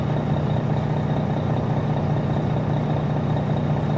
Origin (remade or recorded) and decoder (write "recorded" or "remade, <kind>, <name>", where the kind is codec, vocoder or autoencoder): recorded